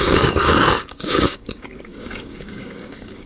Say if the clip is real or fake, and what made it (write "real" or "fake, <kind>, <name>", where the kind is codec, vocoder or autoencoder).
fake, codec, DAC